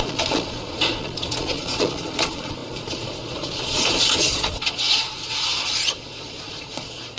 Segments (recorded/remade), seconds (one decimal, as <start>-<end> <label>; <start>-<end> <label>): 0.0-7.2 remade